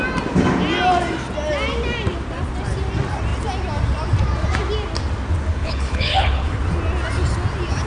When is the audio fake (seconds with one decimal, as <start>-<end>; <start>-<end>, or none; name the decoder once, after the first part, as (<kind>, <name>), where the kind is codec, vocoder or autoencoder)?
5.5-6.6 (codec, HILCodec)